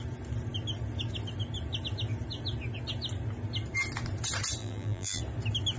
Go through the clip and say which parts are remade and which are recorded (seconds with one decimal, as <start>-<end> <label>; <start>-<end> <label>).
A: 0.0-4.6 recorded; 4.6-5.2 remade; 5.2-5.8 recorded